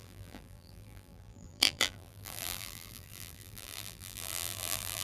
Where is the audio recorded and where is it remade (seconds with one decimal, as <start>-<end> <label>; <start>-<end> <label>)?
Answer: 0.0-5.0 remade